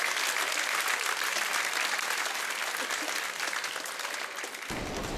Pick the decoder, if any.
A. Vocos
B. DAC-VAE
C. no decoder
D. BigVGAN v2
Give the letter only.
C